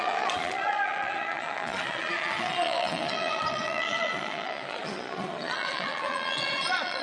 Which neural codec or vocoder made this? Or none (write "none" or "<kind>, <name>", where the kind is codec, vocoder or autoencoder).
vocoder, Vocos